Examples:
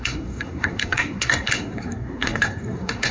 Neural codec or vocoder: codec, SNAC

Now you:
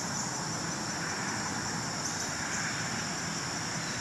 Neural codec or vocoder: none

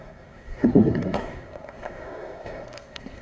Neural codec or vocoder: codec, SNAC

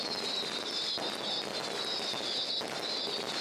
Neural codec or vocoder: none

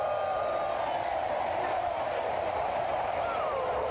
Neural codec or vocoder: none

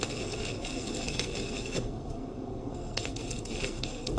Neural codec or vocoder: codec, SNAC